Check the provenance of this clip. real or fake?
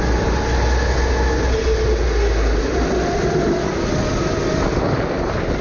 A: real